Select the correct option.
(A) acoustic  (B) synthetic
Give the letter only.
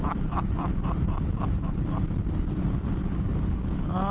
A